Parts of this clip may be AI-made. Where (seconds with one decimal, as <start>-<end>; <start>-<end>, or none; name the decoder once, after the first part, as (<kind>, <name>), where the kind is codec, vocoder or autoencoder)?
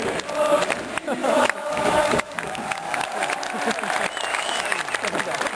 1.2-3.3 (codec, DAC); 4.3-4.8